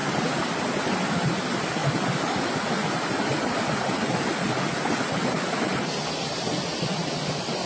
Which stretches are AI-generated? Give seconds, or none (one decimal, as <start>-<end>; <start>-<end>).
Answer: none